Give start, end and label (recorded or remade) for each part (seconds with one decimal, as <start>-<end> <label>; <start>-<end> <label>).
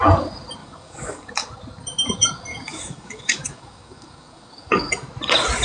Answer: 0.0-0.6 recorded; 0.6-1.3 remade; 1.3-2.5 recorded; 2.5-4.9 remade; 4.9-5.6 recorded